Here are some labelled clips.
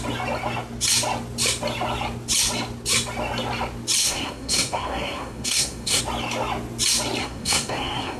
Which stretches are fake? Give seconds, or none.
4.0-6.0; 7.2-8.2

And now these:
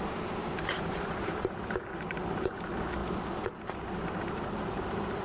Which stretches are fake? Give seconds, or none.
0.4-1.1

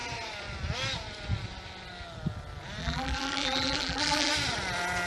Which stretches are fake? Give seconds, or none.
2.8-4.3

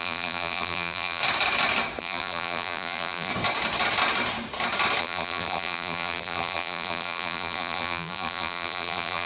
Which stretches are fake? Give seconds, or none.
0.0-1.2; 2.0-3.3; 5.0-9.3

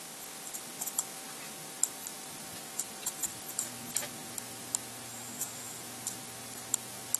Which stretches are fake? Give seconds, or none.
5.1-5.8